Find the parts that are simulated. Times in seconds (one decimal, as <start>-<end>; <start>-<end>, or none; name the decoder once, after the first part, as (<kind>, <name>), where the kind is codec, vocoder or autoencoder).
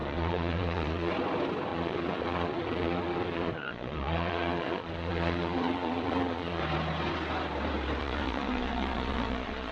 0.0-1.1 (vocoder, Vocos); 1.7-6.6; 8.0-9.7